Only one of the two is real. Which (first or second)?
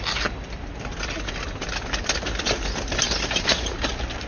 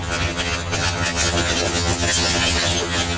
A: first